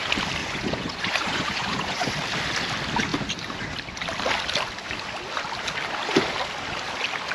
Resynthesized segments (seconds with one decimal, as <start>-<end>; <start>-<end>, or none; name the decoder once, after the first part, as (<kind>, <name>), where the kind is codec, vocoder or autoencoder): 0.4-2.1 (vocoder, Vocos)